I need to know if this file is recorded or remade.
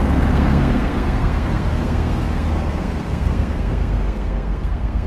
remade